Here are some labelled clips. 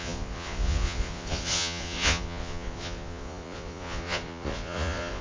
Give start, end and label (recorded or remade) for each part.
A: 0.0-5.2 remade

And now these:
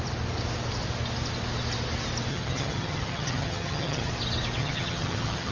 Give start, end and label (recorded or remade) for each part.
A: 0.0-2.3 recorded; 2.3-4.1 remade; 4.1-4.6 recorded; 4.6-5.5 remade

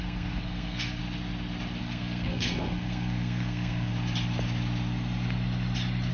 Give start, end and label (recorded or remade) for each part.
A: 0.0-1.0 remade; 1.0-1.8 recorded; 1.8-3.9 remade; 3.9-6.1 recorded

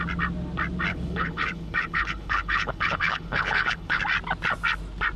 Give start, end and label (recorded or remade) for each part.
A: 0.0-0.9 recorded; 0.9-4.0 remade; 4.0-5.2 recorded

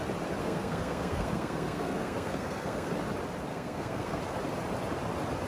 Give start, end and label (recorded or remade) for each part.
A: 0.0-0.4 recorded; 0.4-2.9 remade; 2.9-3.5 recorded; 3.5-4.2 remade; 4.2-5.5 recorded

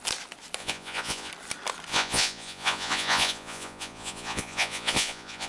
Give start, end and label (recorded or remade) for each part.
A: 0.0-0.6 recorded; 0.6-1.3 remade; 1.3-1.9 recorded; 1.9-5.5 remade